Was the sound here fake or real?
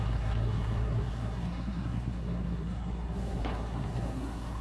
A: fake